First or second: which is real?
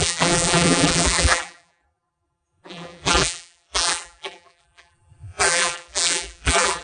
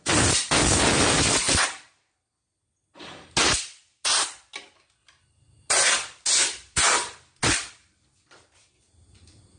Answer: second